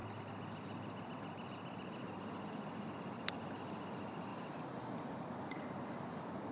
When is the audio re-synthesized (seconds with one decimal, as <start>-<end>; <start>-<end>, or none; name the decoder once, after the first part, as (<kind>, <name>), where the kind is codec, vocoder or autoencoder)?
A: none